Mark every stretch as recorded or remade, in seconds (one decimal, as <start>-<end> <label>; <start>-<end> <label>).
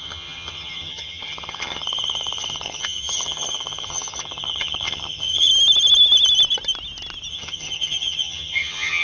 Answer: 0.0-5.5 remade; 5.5-7.3 recorded; 7.3-9.0 remade